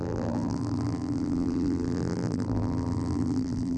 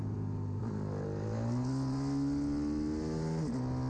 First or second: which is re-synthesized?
first